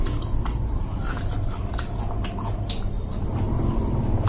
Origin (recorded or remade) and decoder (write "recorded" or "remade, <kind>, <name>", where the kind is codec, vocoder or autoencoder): recorded